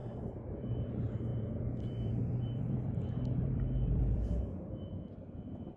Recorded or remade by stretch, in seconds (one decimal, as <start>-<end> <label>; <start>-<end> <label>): 0.0-0.9 remade; 0.9-1.3 recorded; 1.3-4.4 remade; 4.4-5.8 recorded